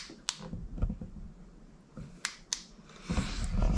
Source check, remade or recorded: recorded